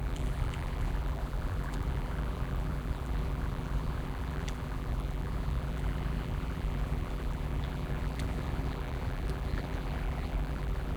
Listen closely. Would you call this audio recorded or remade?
remade